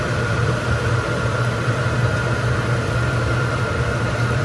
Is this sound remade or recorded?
remade